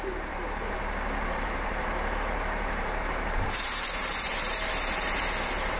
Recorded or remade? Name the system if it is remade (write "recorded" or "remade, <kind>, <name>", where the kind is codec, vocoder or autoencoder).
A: remade, vocoder, BigVGAN v2